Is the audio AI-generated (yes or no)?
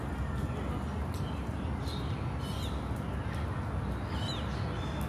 no